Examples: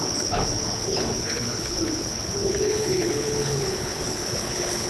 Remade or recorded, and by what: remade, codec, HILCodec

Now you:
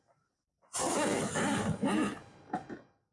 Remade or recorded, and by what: recorded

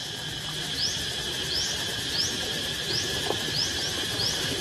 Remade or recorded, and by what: recorded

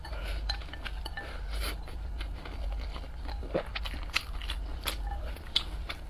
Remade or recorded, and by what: recorded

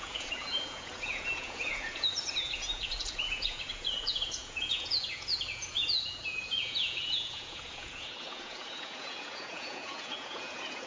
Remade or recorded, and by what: remade, vocoder, Vocos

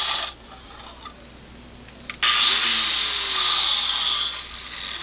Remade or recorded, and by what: recorded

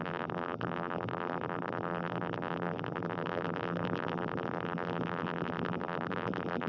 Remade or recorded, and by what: remade, vocoder, BigVGAN v2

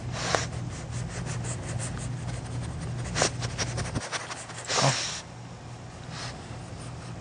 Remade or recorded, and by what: recorded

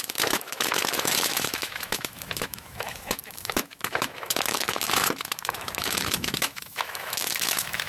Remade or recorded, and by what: remade, autoencoder, DAC-VAE